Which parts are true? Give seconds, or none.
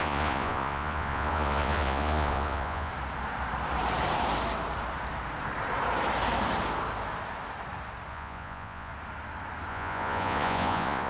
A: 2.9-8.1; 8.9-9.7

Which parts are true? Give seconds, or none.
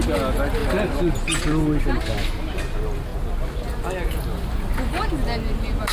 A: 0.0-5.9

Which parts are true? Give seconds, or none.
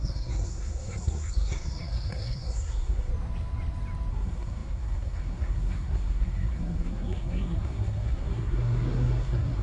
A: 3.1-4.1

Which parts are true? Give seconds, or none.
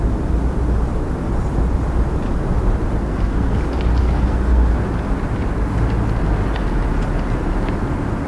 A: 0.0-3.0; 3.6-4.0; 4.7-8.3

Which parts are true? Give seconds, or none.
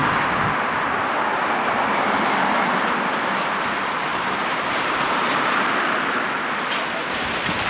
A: 0.0-4.1; 5.7-7.7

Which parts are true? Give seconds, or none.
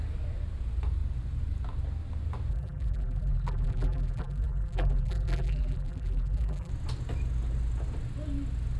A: 0.0-2.5; 6.7-8.8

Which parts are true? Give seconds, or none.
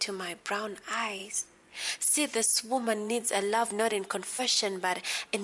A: 0.0-1.2; 4.4-5.4